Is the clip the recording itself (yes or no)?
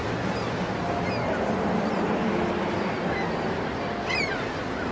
yes